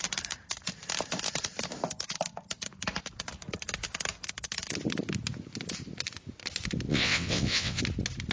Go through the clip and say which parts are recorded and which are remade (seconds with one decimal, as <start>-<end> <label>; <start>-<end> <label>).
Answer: 0.0-6.9 recorded; 6.9-7.8 remade; 7.8-8.3 recorded